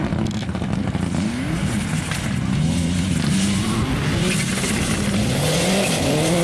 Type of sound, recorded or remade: recorded